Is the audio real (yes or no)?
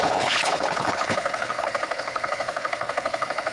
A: no